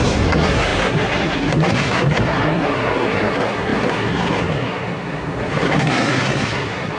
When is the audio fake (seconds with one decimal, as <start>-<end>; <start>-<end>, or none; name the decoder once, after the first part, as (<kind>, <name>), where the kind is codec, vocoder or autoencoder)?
0.0-7.0 (codec, SNAC)